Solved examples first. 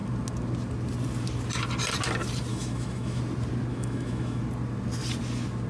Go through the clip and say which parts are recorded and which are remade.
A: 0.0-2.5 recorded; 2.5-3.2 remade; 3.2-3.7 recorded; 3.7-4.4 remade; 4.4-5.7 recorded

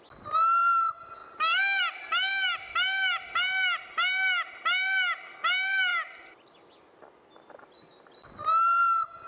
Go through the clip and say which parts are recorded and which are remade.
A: 0.0-9.3 recorded

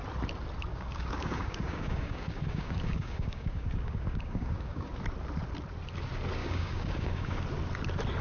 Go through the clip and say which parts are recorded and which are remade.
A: 0.0-0.7 recorded; 0.7-4.9 remade; 4.9-6.4 recorded; 6.4-7.4 remade; 7.4-8.2 recorded